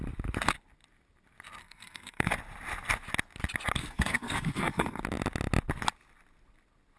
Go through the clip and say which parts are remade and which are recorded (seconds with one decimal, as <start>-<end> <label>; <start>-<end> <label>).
0.0-1.6 recorded; 1.6-2.3 remade; 2.3-3.8 recorded; 3.8-5.0 remade; 5.0-7.0 recorded